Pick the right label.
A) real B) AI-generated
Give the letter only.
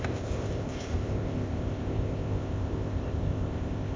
B